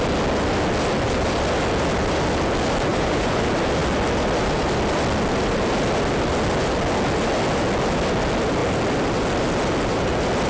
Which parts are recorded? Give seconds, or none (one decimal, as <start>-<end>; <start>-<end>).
0.0-2.9; 3.4-10.5